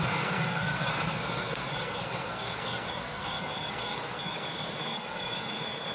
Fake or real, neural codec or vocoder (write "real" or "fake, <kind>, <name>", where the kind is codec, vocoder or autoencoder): fake, codec, SNAC